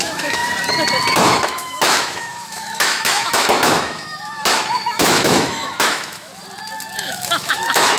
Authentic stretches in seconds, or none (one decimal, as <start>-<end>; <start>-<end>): 0.4-1.1; 6.3-7.0